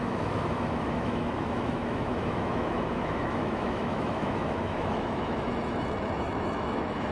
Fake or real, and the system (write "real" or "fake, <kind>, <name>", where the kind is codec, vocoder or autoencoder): fake, autoencoder, DAC-VAE